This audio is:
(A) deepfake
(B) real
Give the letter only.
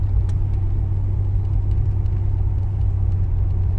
B